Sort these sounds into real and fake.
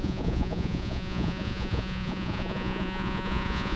fake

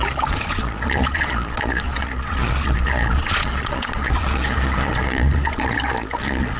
fake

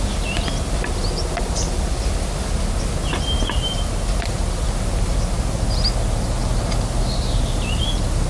real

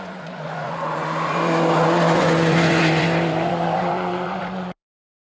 fake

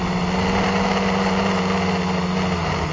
real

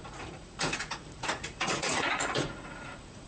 fake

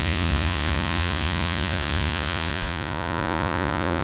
fake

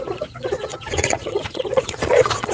fake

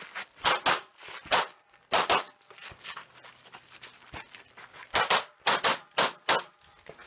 real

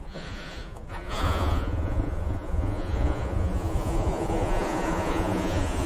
fake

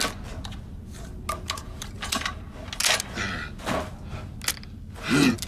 real